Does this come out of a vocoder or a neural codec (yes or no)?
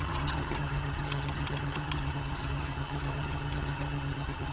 yes